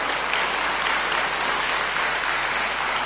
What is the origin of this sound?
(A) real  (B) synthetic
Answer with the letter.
A